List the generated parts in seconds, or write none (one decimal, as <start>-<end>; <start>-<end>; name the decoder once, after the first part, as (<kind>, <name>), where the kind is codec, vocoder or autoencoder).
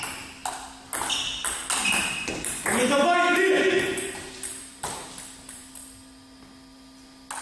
1.8-5.7 (vocoder, BigVGAN v2)